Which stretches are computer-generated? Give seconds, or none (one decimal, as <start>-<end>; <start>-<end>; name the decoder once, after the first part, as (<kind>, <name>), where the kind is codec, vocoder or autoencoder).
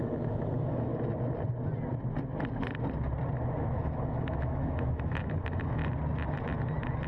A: 0.0-0.9 (autoencoder, DAC-VAE); 3.8-5.8